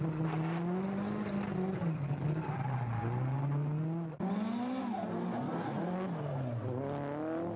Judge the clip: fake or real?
real